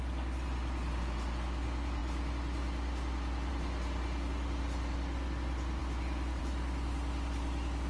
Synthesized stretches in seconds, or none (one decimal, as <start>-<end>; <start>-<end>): none